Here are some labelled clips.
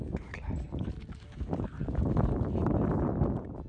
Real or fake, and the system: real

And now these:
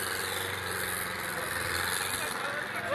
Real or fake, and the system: real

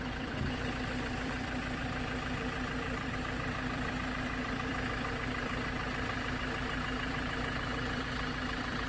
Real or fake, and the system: fake, vocoder, BigVGAN v2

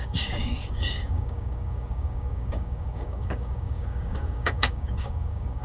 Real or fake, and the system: fake, codec, DAC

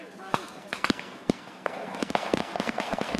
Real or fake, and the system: fake, codec, SNAC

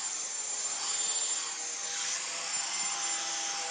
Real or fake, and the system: fake, vocoder, BigVGAN v2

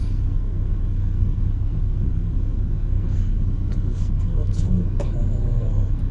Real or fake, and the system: fake, codec, SNAC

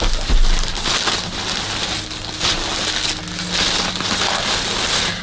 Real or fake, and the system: real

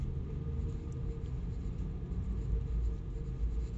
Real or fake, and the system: real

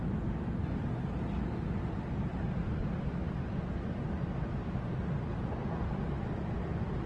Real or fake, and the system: real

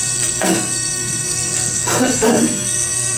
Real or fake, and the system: fake, codec, SNAC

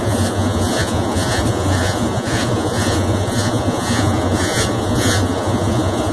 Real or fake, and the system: fake, vocoder, Vocos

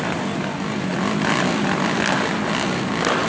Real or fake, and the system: real